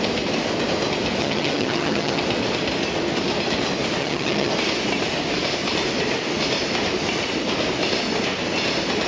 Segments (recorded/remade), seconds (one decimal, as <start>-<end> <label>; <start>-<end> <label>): 0.0-1.2 recorded; 1.2-2.2 remade; 2.2-4.0 recorded; 4.0-4.5 remade; 4.5-9.1 recorded

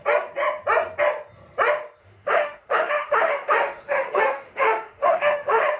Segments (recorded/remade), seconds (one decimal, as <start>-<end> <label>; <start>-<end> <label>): 0.0-2.0 recorded; 2.0-5.8 remade

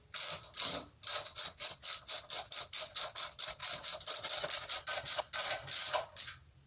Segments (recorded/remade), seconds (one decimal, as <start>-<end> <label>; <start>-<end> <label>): 0.0-6.7 recorded

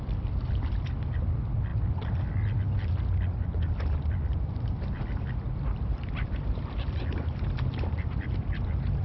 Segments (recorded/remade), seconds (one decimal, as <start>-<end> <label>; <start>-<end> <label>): 0.0-1.7 remade; 1.7-4.4 recorded; 4.4-9.0 remade

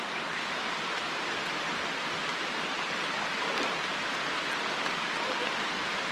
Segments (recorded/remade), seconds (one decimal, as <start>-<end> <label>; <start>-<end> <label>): 0.0-6.1 recorded

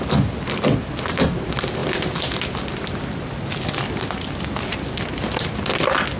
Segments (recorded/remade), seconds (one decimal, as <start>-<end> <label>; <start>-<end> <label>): 0.0-6.2 recorded

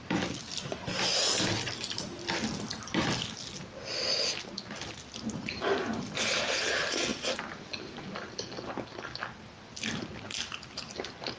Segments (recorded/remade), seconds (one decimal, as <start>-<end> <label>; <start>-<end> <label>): 0.0-11.4 recorded